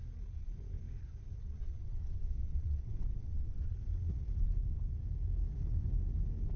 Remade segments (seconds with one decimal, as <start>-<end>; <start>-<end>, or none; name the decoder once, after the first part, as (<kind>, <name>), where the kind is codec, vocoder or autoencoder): 1.4-3.7 (vocoder, WaveNeXt)